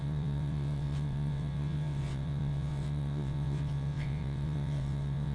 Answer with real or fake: fake